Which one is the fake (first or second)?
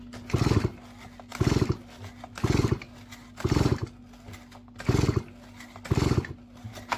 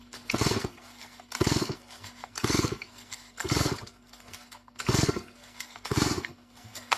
second